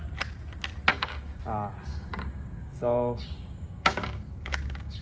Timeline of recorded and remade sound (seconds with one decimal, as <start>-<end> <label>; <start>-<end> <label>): 0.0-0.9 recorded; 0.9-1.4 remade; 1.4-1.9 recorded; 1.9-5.0 remade